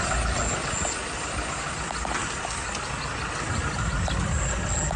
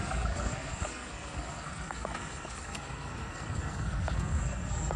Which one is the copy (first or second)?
second